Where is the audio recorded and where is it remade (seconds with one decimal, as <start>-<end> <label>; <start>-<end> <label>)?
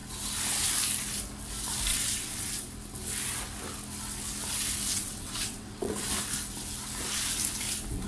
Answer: 0.0-1.9 recorded; 1.9-2.5 remade; 2.5-4.9 recorded; 4.9-5.9 remade; 5.9-8.1 recorded